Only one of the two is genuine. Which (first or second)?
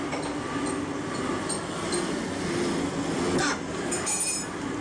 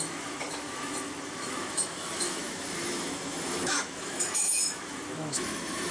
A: first